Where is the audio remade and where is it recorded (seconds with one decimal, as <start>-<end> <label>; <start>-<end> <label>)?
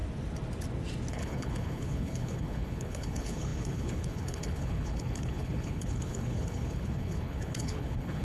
0.0-1.1 recorded; 1.1-8.2 remade